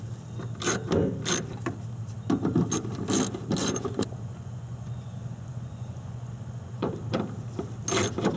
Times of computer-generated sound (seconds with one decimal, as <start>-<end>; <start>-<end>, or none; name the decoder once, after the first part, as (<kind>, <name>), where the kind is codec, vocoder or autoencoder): 3.6-6.9 (vocoder, Vocos)